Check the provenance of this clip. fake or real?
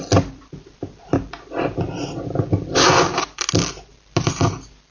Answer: real